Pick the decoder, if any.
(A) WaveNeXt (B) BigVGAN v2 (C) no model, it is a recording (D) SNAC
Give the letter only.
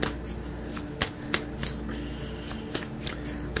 C